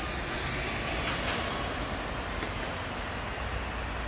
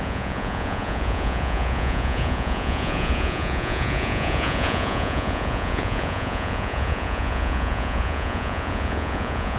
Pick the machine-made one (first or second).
second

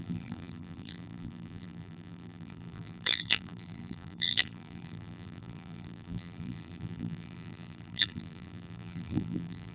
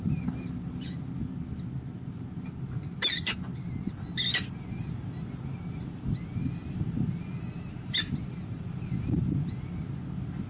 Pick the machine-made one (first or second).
first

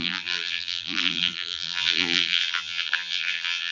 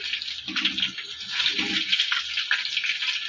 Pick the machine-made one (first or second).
first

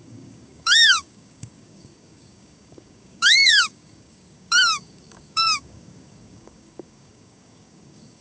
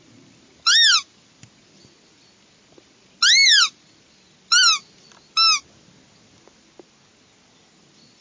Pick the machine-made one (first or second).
first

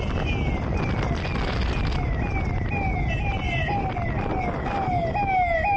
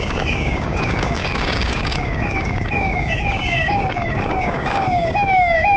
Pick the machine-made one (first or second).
second